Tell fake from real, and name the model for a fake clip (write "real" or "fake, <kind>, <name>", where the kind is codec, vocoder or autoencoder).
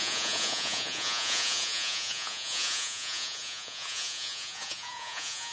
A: fake, vocoder, Vocos